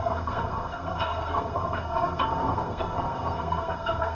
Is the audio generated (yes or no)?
yes